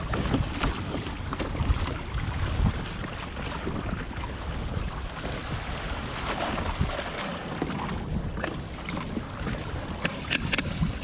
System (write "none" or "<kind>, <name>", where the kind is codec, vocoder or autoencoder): none